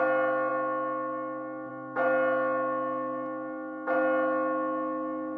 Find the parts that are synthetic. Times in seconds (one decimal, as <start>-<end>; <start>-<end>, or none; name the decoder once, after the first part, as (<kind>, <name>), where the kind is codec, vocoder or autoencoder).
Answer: none